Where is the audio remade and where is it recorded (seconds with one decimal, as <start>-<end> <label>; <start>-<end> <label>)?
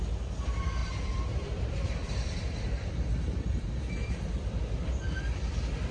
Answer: 0.0-0.8 recorded; 0.8-4.3 remade; 4.3-5.9 recorded